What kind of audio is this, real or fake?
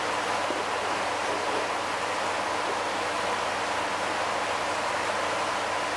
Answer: real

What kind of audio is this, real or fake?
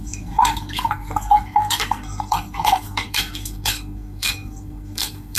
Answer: fake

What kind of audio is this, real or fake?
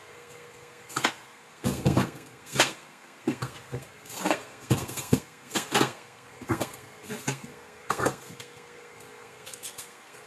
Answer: fake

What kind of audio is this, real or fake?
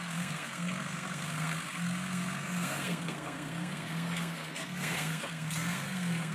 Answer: fake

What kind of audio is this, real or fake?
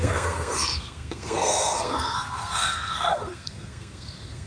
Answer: fake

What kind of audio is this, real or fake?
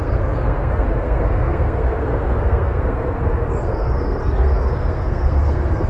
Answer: fake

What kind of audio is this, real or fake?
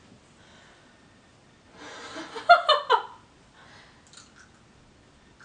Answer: real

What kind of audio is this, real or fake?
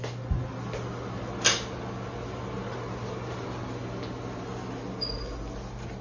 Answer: real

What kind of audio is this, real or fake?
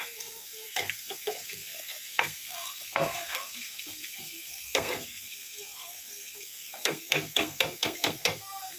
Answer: fake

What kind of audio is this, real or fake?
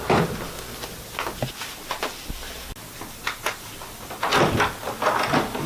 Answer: real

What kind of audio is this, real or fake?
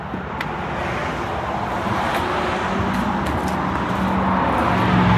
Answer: real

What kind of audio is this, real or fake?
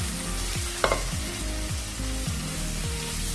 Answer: real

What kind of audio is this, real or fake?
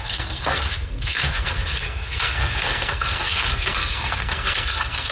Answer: fake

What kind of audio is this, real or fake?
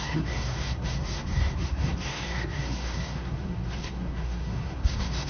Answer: fake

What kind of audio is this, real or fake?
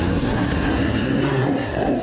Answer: fake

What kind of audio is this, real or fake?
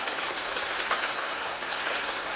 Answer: fake